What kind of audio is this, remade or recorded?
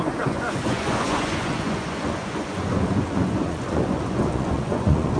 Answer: remade